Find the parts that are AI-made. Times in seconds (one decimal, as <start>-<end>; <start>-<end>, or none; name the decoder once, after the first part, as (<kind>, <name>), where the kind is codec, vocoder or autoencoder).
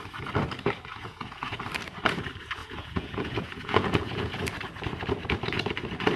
0.9-1.6 (vocoder, Vocos); 2.6-4.4